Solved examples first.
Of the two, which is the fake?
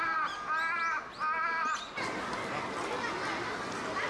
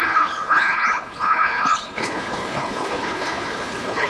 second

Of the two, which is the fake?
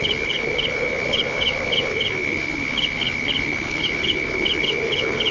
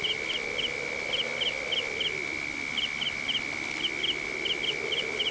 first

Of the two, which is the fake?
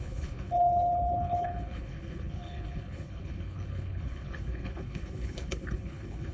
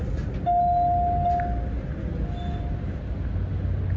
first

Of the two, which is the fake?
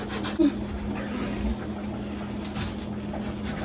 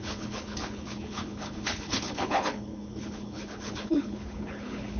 second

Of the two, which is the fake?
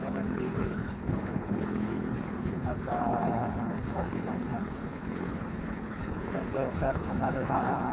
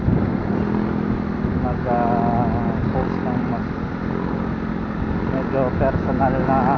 first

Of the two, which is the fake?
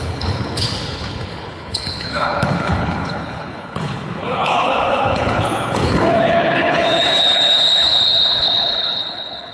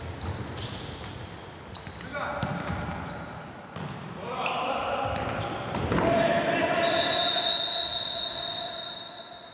first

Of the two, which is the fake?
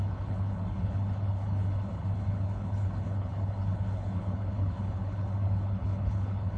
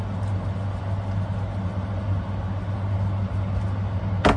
first